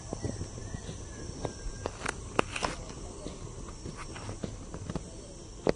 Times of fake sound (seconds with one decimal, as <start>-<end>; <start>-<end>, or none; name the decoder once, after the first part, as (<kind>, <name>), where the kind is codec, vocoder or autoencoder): none

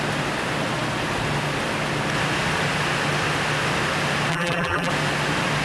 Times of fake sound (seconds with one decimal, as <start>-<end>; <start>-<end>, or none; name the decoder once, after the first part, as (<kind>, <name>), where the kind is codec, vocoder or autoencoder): 4.3-4.9 (vocoder, BigVGAN v2)

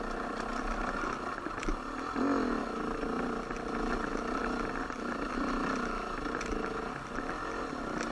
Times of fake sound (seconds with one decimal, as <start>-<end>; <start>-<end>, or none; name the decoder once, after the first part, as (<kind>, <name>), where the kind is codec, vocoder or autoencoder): none

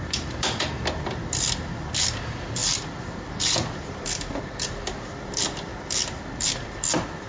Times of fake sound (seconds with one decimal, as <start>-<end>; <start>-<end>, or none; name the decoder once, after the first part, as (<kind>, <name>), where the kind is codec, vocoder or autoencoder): 0.0-7.3 (vocoder, BigVGAN v2)

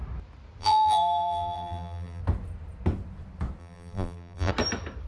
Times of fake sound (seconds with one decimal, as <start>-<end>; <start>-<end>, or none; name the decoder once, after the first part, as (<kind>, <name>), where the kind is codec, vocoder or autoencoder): 0.6-2.2 (vocoder, BigVGAN v2); 3.6-4.5